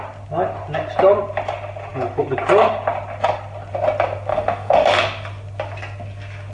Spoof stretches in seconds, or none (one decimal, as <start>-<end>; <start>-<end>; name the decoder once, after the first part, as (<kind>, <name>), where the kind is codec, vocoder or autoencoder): 4.3-4.9 (autoencoder, DAC-VAE)